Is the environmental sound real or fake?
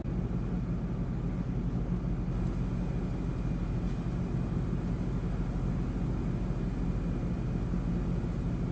real